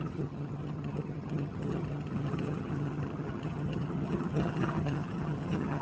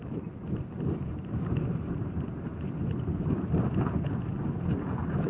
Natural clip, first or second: second